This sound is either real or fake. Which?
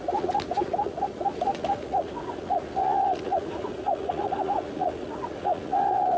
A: fake